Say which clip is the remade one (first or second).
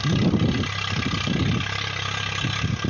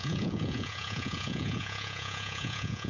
second